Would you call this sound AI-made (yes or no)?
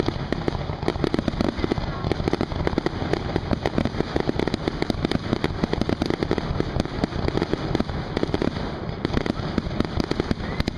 no